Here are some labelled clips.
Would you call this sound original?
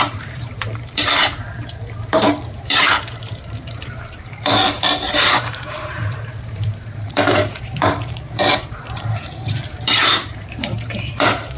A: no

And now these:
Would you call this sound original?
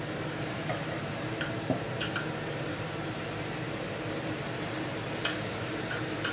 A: no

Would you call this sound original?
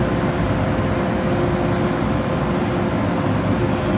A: yes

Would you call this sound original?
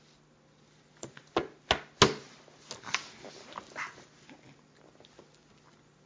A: yes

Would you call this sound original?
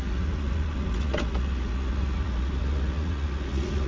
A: no